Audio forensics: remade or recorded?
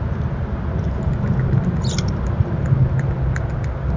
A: recorded